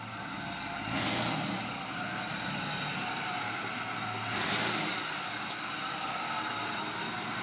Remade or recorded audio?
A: recorded